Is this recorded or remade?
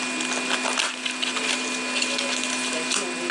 recorded